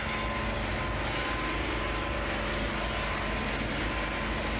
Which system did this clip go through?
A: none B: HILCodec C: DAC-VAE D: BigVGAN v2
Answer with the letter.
A